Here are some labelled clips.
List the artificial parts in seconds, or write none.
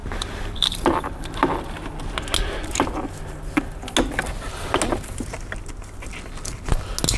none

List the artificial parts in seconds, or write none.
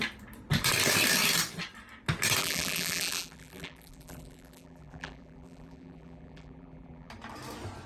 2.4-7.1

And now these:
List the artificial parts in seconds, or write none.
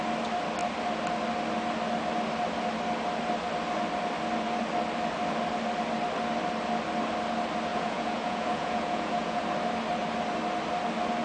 7.7-9.4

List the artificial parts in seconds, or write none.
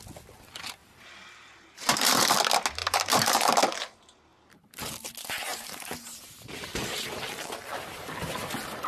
0.8-2.4; 2.8-3.6; 4.3-4.9; 5.5-7.1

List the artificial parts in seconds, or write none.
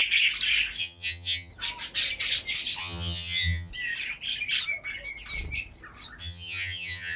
0.8-1.5; 2.8-3.7; 6.2-7.2